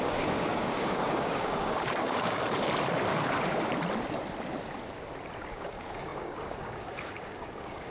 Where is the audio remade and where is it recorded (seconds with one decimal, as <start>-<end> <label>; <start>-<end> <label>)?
0.0-2.4 remade; 2.4-5.5 recorded; 5.5-7.9 remade